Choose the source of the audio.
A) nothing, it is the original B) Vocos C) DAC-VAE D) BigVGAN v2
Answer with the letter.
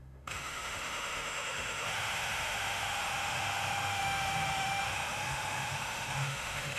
C